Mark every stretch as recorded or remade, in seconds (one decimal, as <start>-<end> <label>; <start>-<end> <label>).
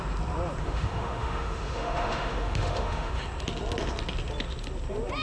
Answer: 0.0-0.6 recorded; 0.6-3.2 remade; 3.2-5.2 recorded